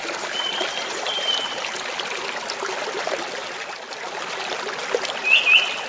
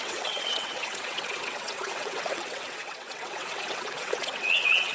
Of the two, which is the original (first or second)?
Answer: first